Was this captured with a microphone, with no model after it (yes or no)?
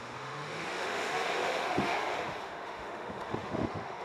no